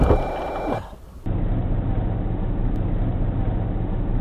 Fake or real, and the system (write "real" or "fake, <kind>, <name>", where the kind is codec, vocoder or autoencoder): real